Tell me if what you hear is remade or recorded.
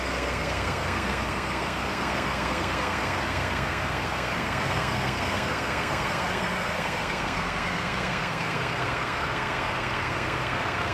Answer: remade